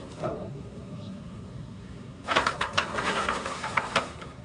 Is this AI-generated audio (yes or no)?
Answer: yes